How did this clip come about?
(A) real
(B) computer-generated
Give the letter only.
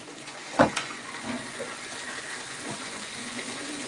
B